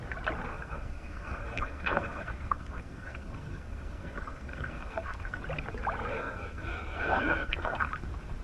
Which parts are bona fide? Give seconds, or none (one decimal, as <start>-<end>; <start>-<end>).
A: 0.0-0.5; 5.4-6.1; 7.9-8.4